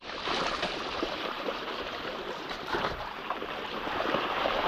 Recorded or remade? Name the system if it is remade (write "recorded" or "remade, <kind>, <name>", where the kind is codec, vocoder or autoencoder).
remade, vocoder, BigVGAN v2